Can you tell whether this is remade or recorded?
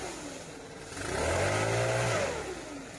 recorded